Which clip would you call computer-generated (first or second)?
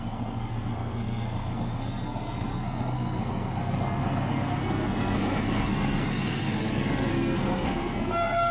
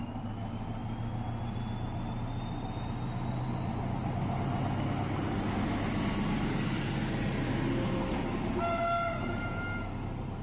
first